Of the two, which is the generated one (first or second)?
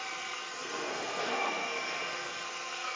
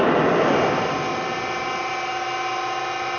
first